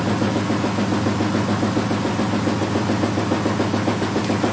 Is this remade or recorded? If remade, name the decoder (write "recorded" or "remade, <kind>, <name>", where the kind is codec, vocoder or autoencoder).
recorded